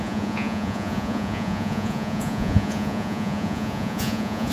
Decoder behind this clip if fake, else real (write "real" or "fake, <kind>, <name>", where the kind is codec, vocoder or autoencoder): fake, vocoder, Vocos